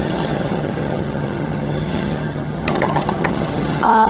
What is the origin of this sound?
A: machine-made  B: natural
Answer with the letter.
A